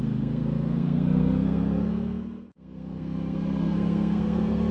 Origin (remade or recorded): remade